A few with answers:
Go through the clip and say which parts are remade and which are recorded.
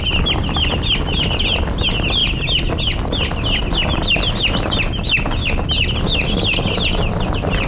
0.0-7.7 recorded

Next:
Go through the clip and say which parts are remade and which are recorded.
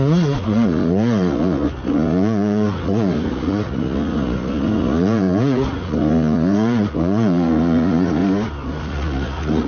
0.0-8.2 remade; 8.2-8.8 recorded; 8.8-9.7 remade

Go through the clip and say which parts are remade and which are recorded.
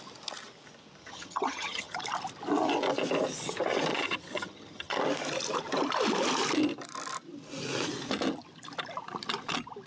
0.0-1.0 recorded; 1.0-2.0 remade; 2.0-3.9 recorded; 3.9-5.0 remade; 5.0-9.9 recorded